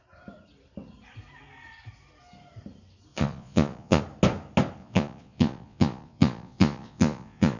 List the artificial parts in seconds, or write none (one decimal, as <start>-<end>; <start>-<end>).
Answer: 3.1-4.0; 4.8-7.6

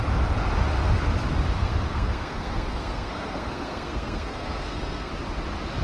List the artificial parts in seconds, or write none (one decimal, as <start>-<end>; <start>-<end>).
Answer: 1.6-5.1

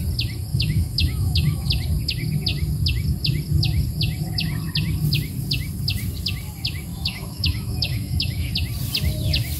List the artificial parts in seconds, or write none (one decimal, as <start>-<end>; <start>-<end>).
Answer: 0.5-1.7; 6.9-8.5

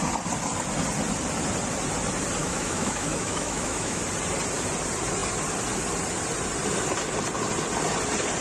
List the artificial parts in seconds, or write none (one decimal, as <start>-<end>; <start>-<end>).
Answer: 2.4-4.0

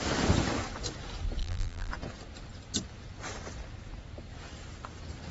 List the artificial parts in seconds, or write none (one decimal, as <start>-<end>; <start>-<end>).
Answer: 1.4-1.9

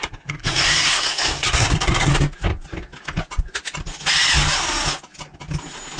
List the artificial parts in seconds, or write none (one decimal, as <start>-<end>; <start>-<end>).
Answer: 0.0-2.1